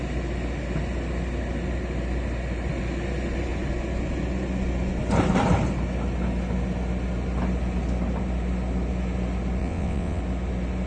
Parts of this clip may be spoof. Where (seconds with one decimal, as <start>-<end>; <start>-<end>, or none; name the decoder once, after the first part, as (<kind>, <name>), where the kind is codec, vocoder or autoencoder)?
9.6-10.2 (vocoder, WaveNeXt)